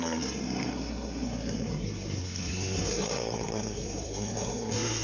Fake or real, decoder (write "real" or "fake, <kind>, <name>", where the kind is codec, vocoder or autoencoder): fake, codec, SNAC